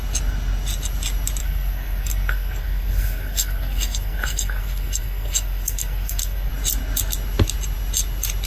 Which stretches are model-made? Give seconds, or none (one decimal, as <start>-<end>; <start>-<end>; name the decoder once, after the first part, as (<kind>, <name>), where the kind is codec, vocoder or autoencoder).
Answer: 1.4-6.5 (codec, SNAC)